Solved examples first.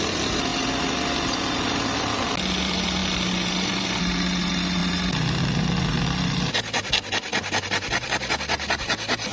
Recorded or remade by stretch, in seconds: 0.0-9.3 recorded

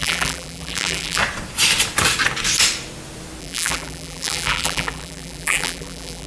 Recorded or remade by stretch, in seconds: 0.0-1.2 remade; 1.2-3.4 recorded; 3.4-6.3 remade

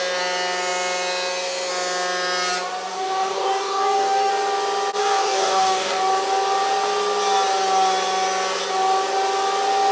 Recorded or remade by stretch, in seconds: 0.0-2.9 recorded; 2.9-4.3 remade; 4.3-5.0 recorded; 5.0-6.0 remade; 6.0-9.9 recorded

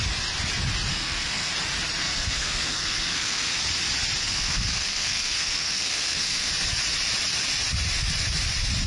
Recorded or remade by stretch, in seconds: 0.0-0.9 recorded; 0.9-1.5 remade; 1.5-2.0 recorded; 2.0-3.6 remade; 3.6-4.2 recorded; 4.2-6.5 remade; 6.5-8.9 recorded

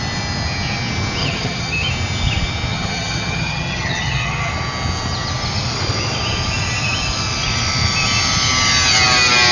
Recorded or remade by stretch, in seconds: 0.0-1.2 recorded; 1.2-1.9 remade; 1.9-2.7 recorded; 2.7-4.5 remade; 4.5-9.5 recorded

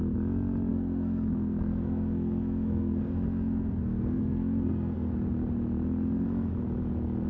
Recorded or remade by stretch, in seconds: 0.0-0.7 recorded; 0.7-5.1 remade; 5.1-7.3 recorded

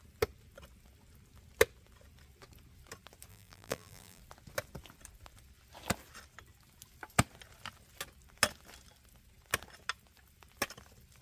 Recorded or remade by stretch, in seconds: 0.0-3.3 recorded; 3.3-4.2 remade; 4.2-11.2 recorded